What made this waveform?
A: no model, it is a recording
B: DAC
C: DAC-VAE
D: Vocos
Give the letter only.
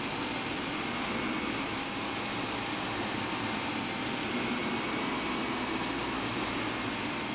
A